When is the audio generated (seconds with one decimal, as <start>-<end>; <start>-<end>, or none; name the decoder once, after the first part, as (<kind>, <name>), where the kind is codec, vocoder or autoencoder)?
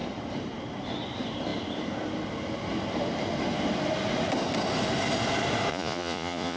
5.7-6.6 (vocoder, Vocos)